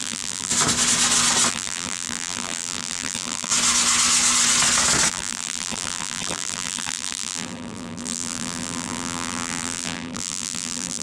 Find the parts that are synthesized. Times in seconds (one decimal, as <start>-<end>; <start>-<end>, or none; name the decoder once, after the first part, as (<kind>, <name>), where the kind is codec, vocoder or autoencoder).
0.0-0.5 (vocoder, BigVGAN v2); 1.5-3.5; 5.1-11.0